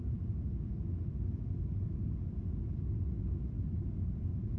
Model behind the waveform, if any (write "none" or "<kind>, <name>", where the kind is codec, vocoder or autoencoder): none